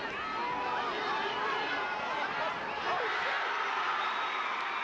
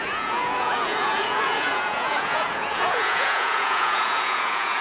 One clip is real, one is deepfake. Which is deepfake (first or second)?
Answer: second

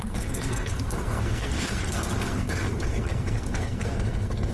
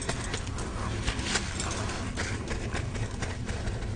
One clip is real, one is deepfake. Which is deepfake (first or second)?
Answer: first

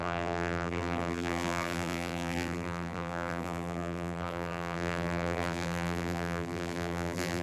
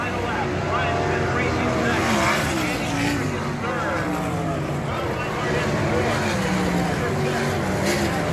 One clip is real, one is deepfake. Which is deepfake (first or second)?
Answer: first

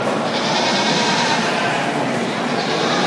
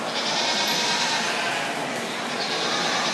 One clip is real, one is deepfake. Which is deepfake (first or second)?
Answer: first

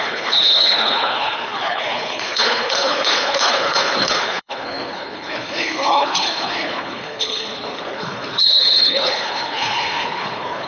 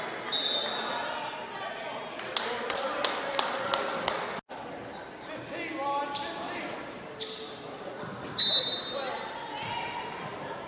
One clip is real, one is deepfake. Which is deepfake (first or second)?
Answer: first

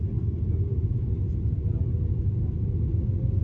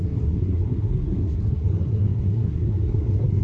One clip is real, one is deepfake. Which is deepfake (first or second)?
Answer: second